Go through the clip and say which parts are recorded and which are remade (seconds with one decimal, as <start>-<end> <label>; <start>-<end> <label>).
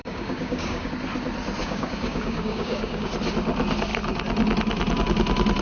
0.0-0.9 remade; 0.9-1.6 recorded; 1.6-3.1 remade; 3.1-5.6 recorded